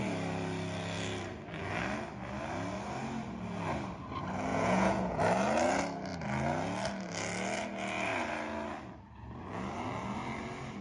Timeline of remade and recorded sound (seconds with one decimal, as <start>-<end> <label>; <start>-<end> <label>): 0.0-4.5 recorded; 4.5-5.2 remade; 5.2-10.8 recorded